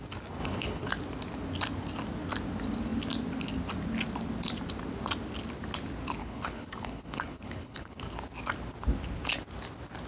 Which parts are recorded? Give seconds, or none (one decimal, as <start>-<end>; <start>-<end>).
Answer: 0.0-0.4; 0.9-6.2; 8.0-10.1